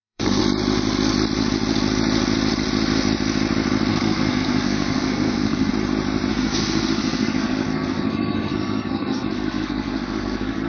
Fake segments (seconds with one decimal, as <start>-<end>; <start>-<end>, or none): 0.0-0.4; 3.9-5.7; 6.3-10.7